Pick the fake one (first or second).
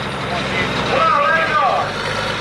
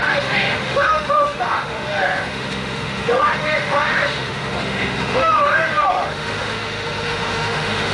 second